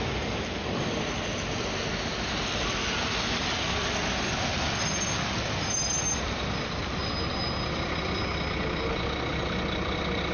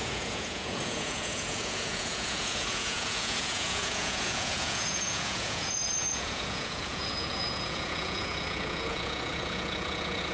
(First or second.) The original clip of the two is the first